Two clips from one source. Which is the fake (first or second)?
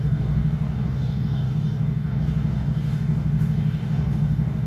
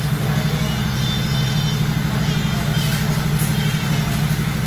first